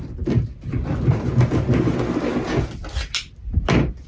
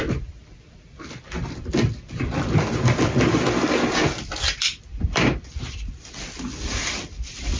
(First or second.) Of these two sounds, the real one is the first